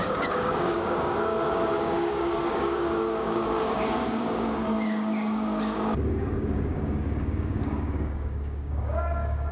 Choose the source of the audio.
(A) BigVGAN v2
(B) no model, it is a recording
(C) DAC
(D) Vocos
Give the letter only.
C